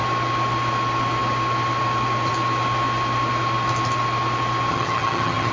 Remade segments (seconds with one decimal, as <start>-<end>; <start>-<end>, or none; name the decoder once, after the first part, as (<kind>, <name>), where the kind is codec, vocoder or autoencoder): 4.7-5.5 (vocoder, HiFi-GAN)